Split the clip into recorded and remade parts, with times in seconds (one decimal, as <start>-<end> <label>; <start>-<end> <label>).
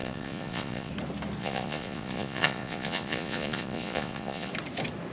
0.0-0.9 remade; 0.9-1.4 recorded; 1.4-4.5 remade; 4.5-5.1 recorded